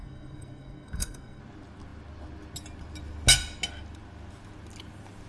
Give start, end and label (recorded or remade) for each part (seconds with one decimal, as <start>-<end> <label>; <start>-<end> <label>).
0.0-1.4 remade; 1.4-5.3 recorded